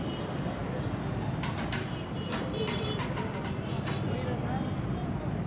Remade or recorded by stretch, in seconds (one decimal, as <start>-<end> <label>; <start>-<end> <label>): 0.0-0.6 recorded; 0.6-3.9 remade; 3.9-5.5 recorded